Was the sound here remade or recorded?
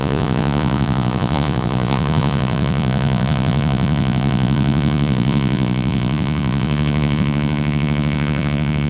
remade